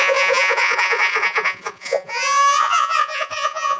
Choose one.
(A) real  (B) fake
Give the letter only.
B